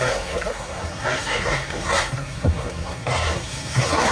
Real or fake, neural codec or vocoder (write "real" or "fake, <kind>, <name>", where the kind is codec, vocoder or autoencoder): fake, codec, SNAC